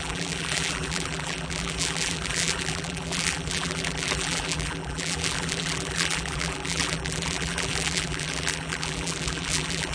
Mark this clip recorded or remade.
remade